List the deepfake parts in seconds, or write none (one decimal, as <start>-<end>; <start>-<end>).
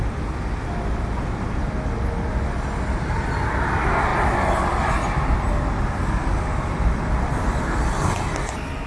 none